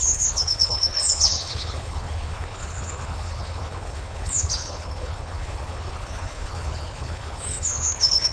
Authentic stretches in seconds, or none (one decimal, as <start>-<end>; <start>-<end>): none